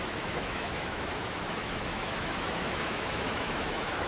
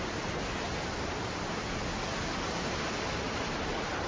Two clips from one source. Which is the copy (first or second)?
first